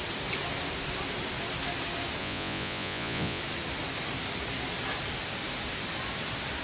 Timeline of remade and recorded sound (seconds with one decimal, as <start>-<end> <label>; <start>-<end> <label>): 0.0-2.2 recorded; 2.2-3.4 remade; 3.4-6.6 recorded